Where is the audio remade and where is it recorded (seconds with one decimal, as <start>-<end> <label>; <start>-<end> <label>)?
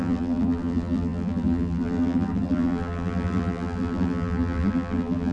0.0-5.3 remade